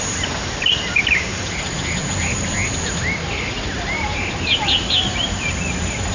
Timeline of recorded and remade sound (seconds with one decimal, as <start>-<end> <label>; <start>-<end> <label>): 0.0-1.3 recorded; 1.3-2.5 remade; 2.5-3.2 recorded; 3.2-5.5 remade; 5.5-6.1 recorded